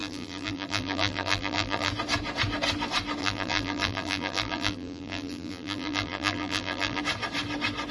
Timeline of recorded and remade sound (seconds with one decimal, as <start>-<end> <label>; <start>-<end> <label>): 0.0-1.9 remade; 1.9-3.2 recorded; 3.2-7.0 remade; 7.0-7.9 recorded